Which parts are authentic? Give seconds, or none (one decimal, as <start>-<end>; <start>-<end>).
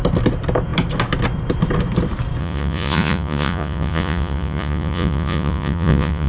0.0-2.4